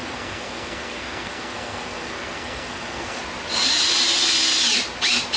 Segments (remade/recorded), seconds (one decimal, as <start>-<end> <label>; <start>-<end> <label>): 0.0-3.2 remade; 3.2-5.4 recorded